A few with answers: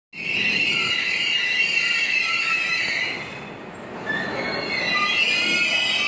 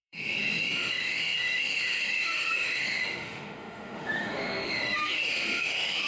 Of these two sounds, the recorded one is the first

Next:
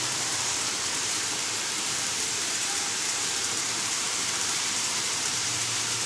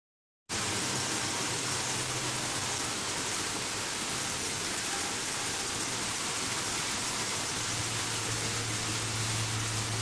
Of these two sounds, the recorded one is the second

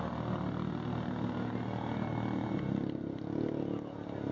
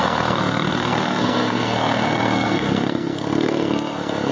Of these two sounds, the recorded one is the first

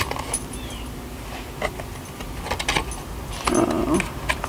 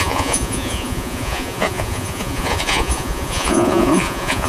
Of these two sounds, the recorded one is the first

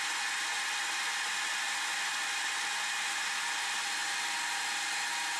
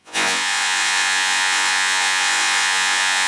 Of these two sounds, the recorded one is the first